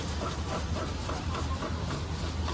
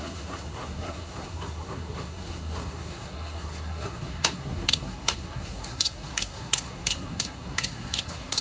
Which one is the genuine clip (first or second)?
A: first